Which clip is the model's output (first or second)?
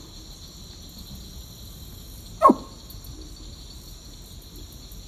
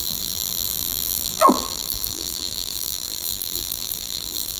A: second